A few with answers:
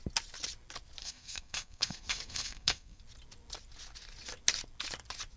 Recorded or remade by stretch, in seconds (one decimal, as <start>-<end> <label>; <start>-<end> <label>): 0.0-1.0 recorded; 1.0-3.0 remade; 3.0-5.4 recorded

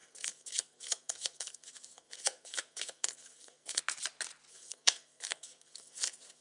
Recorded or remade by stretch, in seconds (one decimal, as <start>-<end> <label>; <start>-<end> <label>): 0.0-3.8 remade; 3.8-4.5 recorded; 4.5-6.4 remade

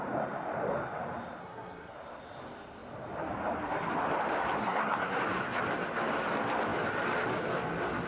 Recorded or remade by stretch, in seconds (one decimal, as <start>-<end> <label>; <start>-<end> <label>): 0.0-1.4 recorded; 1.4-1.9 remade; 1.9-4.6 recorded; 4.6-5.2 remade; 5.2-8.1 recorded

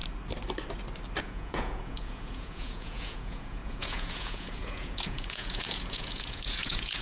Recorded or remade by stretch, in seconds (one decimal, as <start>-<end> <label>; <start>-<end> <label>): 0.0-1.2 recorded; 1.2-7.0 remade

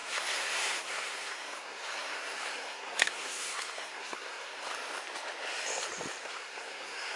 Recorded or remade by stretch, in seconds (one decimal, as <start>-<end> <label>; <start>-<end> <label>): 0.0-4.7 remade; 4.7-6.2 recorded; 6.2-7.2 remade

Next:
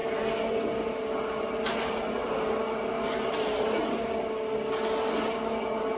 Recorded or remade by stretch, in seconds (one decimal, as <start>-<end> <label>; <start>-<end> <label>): 0.0-6.0 recorded

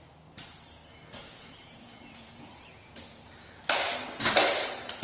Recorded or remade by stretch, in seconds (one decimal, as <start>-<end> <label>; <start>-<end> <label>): 0.0-0.9 recorded; 0.9-3.7 remade; 3.7-5.0 recorded

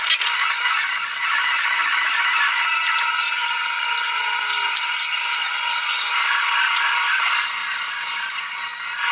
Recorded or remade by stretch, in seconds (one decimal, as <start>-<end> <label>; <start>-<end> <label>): 0.0-7.6 recorded; 7.6-8.4 remade; 8.4-9.1 recorded